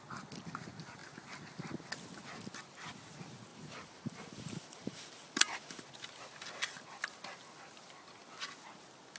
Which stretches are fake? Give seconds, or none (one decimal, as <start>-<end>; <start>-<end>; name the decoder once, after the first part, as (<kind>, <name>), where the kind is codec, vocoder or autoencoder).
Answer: 3.5-5.8 (vocoder, BigVGAN v2)